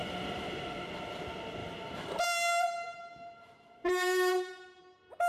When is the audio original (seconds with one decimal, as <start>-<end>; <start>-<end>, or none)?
0.9-1.6; 4.8-5.3